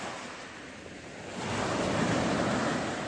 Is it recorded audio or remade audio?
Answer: recorded